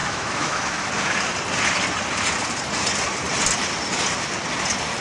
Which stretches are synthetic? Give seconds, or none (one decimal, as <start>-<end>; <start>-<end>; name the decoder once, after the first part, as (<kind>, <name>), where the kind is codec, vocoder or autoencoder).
0.0-0.9 (autoencoder, DAC-VAE)